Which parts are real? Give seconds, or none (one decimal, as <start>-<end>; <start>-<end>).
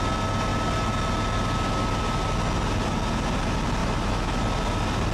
0.0-3.8; 4.4-5.1